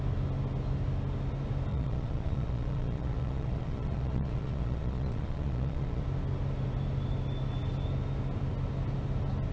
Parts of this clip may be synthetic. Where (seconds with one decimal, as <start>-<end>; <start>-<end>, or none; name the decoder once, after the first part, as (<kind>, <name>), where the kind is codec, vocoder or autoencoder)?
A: 1.7-6.0 (vocoder, Vocos)